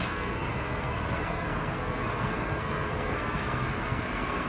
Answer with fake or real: fake